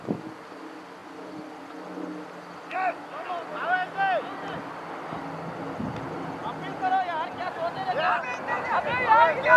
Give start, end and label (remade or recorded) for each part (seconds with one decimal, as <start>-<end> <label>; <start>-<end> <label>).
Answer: 0.0-9.6 recorded